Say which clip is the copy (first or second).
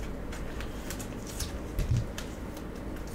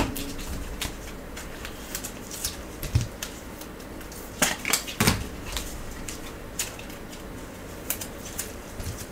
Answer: second